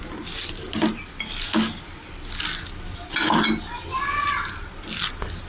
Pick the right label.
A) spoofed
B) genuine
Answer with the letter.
B